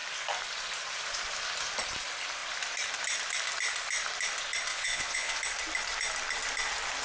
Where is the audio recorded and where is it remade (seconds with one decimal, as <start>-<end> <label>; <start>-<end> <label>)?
0.0-4.7 recorded; 4.7-5.4 remade; 5.4-7.0 recorded